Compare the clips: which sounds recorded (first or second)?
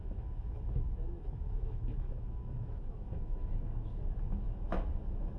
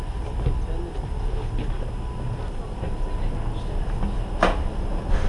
second